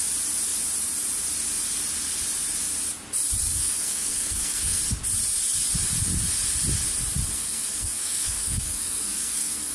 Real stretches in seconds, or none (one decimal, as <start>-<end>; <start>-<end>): 0.0-3.6; 4.8-7.3